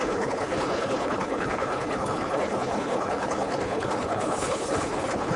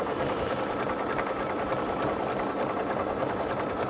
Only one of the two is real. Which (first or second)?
second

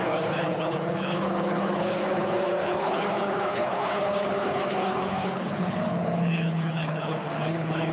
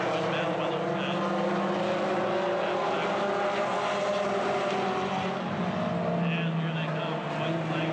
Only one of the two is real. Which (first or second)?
second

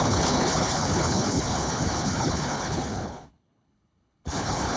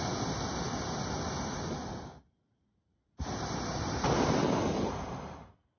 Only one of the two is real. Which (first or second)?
second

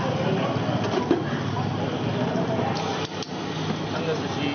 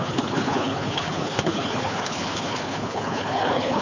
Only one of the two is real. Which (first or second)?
first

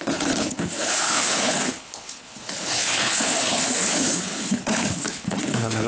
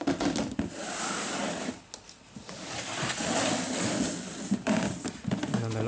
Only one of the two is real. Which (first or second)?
second